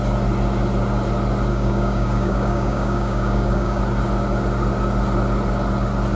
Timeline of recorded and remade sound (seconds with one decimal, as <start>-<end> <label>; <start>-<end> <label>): 0.0-1.5 recorded; 1.5-3.8 remade; 3.8-6.2 recorded